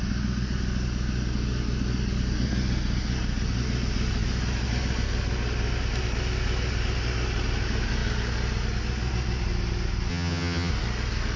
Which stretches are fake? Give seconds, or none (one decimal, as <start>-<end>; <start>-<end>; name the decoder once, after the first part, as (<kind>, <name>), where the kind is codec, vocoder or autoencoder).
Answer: 10.1-10.7 (vocoder, HiFi-GAN)